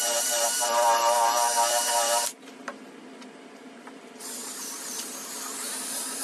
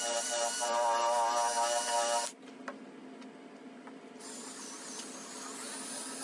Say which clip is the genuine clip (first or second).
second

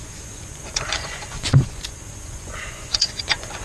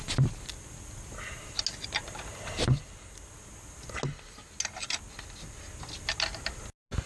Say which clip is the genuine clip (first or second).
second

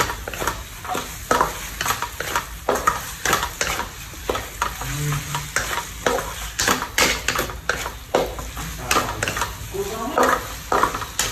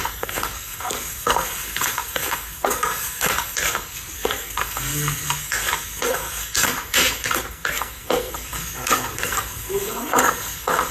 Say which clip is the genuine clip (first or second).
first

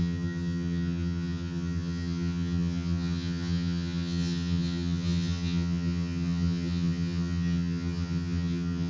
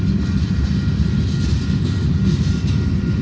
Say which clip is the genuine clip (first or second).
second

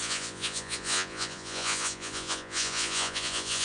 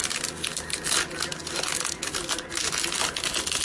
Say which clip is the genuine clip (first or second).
second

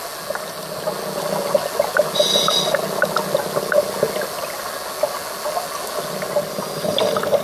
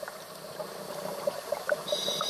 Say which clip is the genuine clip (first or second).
first